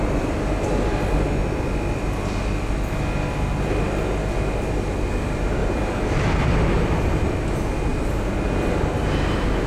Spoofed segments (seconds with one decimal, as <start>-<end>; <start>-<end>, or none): 5.6-7.3